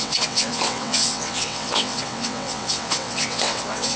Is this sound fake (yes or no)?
yes